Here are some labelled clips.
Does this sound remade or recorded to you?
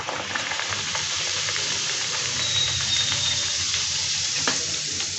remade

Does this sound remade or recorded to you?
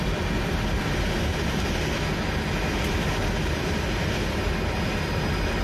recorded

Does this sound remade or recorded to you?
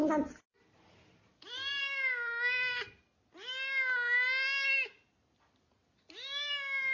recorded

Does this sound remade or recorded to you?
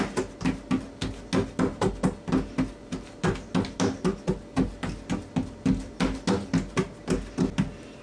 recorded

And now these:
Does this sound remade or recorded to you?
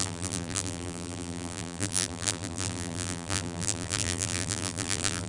remade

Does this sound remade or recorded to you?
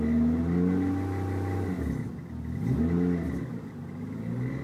recorded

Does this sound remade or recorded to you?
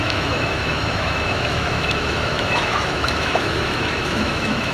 remade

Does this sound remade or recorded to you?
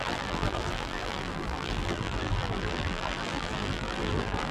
remade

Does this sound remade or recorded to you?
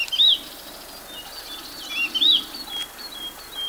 recorded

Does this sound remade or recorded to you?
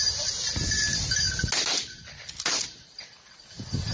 recorded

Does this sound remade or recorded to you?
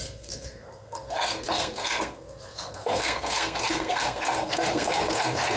remade